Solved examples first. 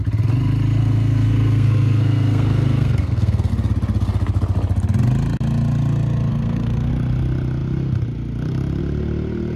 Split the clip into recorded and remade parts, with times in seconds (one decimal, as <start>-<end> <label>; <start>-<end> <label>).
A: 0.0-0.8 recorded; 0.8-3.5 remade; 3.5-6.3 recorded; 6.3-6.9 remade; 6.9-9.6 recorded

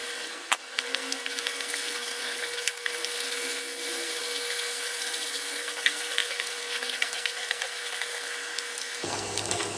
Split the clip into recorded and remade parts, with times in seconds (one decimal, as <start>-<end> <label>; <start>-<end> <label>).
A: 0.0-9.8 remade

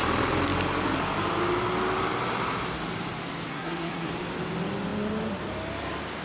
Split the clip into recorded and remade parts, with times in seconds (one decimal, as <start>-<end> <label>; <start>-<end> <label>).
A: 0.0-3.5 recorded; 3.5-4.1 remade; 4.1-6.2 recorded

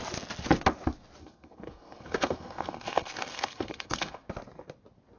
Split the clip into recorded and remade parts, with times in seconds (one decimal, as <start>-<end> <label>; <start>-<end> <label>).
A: 0.0-1.2 recorded; 1.2-4.3 remade; 4.3-5.2 recorded

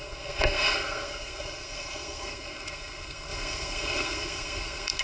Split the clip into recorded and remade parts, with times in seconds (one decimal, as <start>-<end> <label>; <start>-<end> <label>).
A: 0.0-5.0 remade